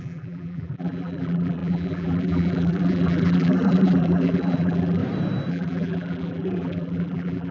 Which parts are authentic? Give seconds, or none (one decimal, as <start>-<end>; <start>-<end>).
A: 5.0-5.5